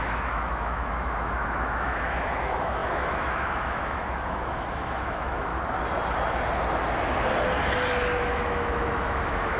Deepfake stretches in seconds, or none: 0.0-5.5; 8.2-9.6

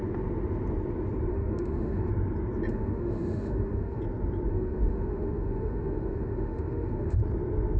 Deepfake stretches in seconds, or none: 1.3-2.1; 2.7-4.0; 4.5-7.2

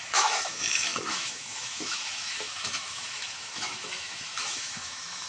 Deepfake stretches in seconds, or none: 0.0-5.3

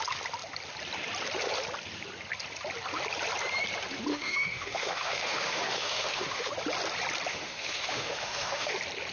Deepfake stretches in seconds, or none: 4.1-6.5; 7.3-8.7

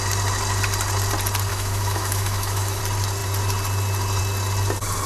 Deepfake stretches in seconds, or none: 1.5-2.8

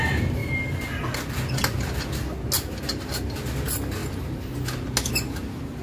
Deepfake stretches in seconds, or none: none